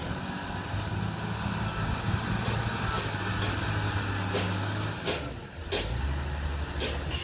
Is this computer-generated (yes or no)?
no